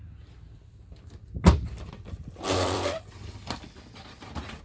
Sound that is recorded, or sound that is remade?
remade